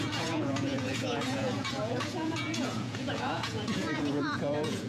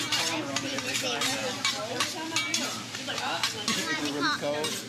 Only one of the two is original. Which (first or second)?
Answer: second